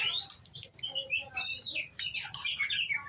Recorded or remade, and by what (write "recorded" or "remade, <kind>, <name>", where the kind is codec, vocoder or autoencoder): recorded